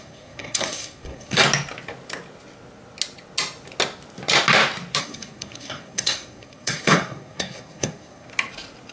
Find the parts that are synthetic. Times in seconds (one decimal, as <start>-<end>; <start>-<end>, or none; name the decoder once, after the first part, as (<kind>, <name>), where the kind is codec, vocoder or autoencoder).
0.0-1.4 (codec, SNAC); 5.0-8.3